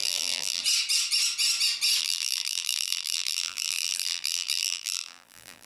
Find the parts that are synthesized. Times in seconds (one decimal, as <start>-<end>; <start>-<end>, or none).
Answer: 0.0-0.6; 2.0-5.7